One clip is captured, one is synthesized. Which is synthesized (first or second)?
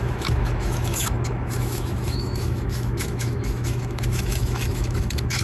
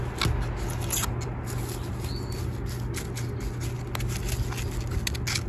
first